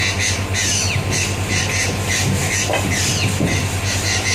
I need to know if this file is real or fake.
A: real